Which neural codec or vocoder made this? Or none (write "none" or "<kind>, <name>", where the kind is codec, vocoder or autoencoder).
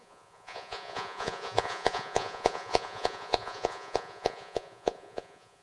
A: vocoder, Vocos